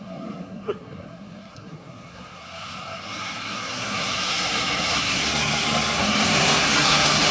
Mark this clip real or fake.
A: fake